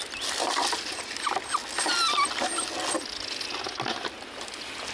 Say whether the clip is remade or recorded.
recorded